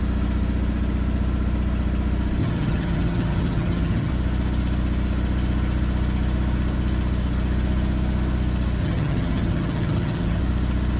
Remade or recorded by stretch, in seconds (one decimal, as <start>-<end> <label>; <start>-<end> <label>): 0.0-2.4 recorded; 2.4-4.1 remade; 4.1-8.8 recorded; 8.8-10.4 remade; 10.4-11.0 recorded